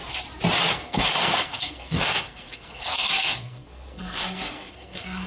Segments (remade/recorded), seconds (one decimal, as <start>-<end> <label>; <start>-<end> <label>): 0.0-0.7 recorded; 0.7-5.3 remade